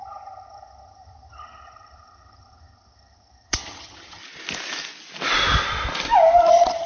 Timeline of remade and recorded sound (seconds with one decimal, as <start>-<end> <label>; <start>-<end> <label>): 0.0-4.2 remade; 4.2-6.5 recorded; 6.5-6.9 remade